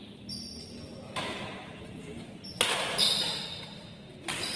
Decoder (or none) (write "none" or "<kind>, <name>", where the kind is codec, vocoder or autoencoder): none